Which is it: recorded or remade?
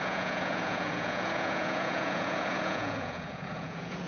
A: remade